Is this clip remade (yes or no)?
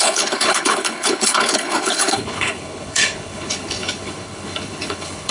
yes